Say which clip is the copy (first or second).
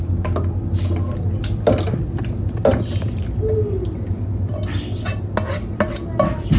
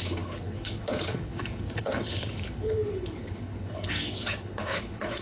second